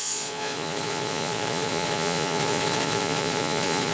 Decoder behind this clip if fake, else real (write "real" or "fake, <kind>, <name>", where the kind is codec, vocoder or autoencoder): fake, vocoder, Vocos